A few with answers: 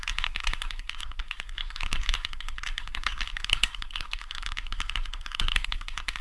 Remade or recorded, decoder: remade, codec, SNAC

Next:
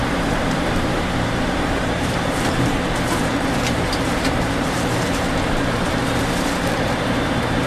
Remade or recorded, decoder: remade, vocoder, BigVGAN v2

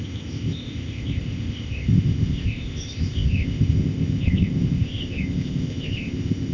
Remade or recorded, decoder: remade, codec, ZipCodec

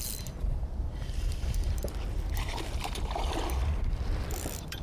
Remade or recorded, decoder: remade, vocoder, BigVGAN v2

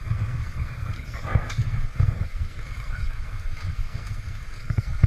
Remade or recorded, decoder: remade, codec, SNAC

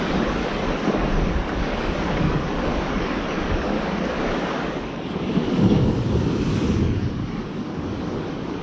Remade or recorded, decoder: remade, codec, DAC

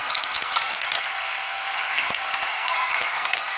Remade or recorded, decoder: remade, codec, SNAC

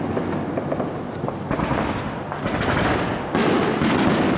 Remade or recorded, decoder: recorded